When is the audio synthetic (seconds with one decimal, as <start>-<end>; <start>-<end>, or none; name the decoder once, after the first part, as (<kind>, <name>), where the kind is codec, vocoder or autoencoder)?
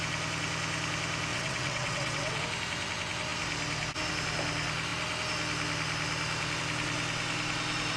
1.3-2.4 (vocoder, WaveNeXt)